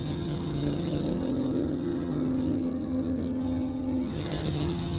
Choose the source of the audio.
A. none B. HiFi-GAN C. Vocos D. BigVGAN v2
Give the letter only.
B